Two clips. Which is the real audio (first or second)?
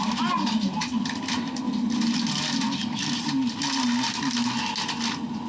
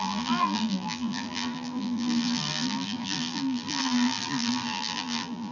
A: first